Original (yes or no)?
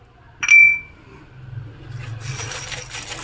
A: yes